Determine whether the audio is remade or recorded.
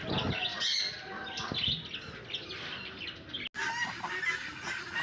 recorded